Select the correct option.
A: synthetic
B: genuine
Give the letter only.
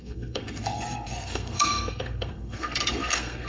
A